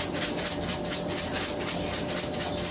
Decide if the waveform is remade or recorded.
recorded